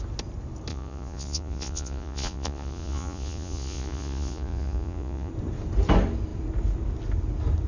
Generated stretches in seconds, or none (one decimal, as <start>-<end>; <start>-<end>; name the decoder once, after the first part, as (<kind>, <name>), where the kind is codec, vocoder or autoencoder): 0.7-5.3 (vocoder, Vocos)